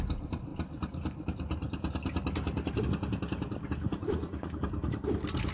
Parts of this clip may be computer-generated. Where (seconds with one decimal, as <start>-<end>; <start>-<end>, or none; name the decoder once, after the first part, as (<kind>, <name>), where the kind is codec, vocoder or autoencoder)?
3.9-4.6 (vocoder, Vocos)